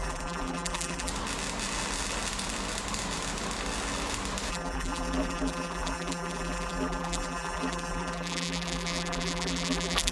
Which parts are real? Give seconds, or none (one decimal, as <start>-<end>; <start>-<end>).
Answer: 1.1-4.5